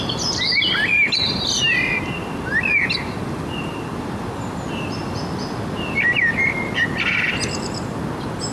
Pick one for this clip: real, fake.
real